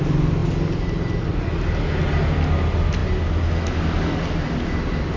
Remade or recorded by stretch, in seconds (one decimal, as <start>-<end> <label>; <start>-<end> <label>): 0.0-5.2 recorded